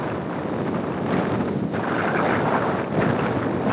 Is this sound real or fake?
real